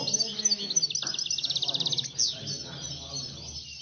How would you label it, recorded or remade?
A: recorded